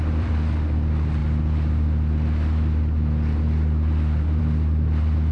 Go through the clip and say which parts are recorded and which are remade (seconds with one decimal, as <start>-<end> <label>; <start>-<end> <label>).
0.0-1.2 remade; 1.2-4.4 recorded; 4.4-5.3 remade